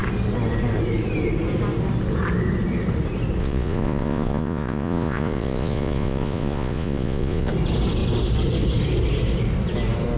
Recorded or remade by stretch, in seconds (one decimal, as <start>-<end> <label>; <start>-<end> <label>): 0.0-3.4 recorded; 3.4-7.5 remade; 7.5-10.2 recorded